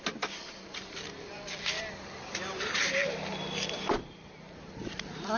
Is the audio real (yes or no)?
yes